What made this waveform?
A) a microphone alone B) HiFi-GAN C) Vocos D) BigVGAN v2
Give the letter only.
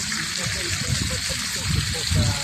A